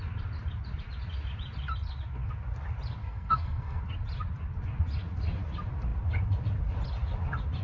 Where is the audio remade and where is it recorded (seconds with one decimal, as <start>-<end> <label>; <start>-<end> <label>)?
0.0-3.0 recorded; 3.0-3.8 remade; 3.8-7.6 recorded

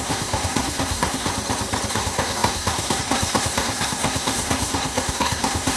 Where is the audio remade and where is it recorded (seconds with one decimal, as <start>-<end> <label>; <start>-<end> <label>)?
0.0-1.3 remade; 1.3-1.9 recorded; 1.9-5.8 remade

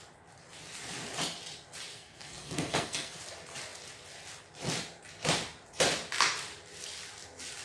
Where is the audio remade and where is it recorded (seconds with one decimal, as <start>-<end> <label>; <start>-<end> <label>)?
0.0-1.9 recorded; 1.9-3.2 remade; 3.2-7.6 recorded

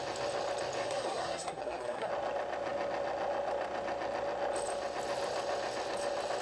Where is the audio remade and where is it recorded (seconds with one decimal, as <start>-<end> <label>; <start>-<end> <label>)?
0.0-0.8 recorded; 0.8-2.1 remade; 2.1-6.4 recorded

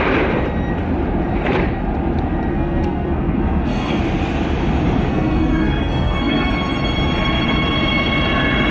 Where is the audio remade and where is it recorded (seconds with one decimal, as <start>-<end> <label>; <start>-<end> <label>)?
0.0-2.5 recorded; 2.5-4.0 remade; 4.0-5.1 recorded; 5.1-6.5 remade; 6.5-8.7 recorded

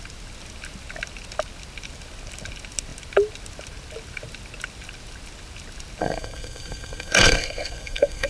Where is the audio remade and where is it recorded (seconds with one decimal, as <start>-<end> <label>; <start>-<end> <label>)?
0.0-6.0 recorded; 6.0-8.3 remade